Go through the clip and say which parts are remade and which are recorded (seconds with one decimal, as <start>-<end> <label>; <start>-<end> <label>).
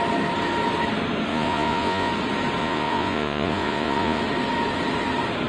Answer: 0.0-1.3 recorded; 1.3-2.1 remade; 2.1-2.6 recorded; 2.6-4.2 remade; 4.2-5.5 recorded